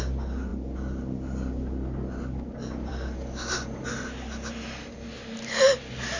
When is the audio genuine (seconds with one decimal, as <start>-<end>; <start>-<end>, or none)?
0.0-6.2